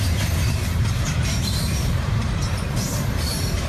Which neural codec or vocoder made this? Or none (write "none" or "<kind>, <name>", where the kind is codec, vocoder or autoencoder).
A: vocoder, BigVGAN v2